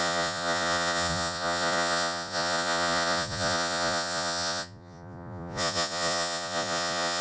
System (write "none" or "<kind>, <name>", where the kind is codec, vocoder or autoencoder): vocoder, Vocos